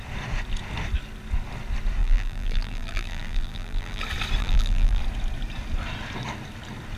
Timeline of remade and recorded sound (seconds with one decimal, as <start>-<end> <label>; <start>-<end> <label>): 0.0-2.0 recorded; 2.0-4.0 remade; 4.0-4.4 recorded; 4.4-5.0 remade; 5.0-7.0 recorded